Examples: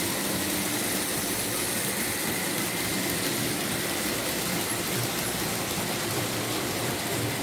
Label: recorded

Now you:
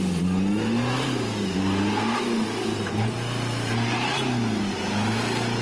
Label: recorded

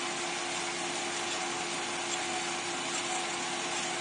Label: recorded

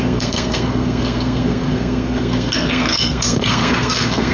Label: remade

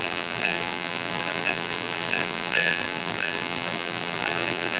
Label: remade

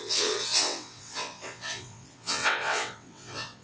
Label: remade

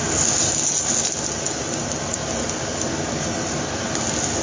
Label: recorded